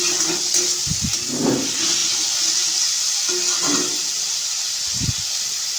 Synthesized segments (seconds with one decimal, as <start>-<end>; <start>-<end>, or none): none